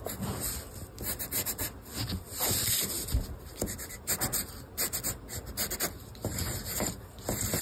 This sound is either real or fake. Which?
real